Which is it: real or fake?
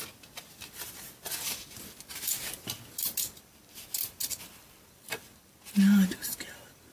real